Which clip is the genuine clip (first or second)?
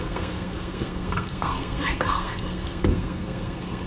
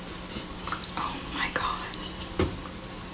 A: second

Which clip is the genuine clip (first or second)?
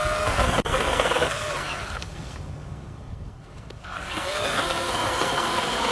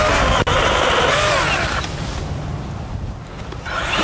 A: second